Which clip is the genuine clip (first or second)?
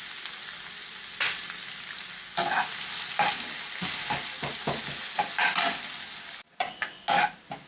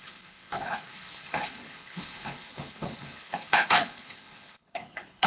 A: first